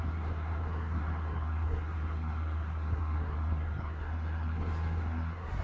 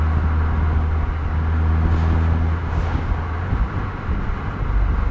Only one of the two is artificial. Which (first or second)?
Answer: first